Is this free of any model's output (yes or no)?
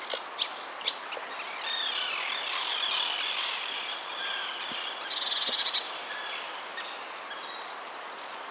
yes